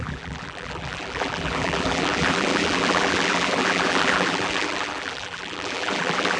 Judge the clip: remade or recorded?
remade